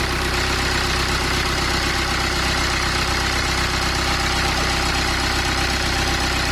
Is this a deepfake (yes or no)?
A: no